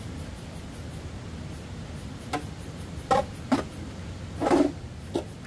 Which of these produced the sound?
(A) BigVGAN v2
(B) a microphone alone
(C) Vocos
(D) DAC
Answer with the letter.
B